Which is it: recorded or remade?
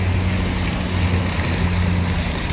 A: recorded